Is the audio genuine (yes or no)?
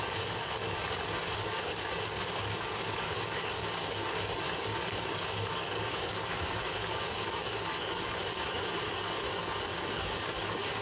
no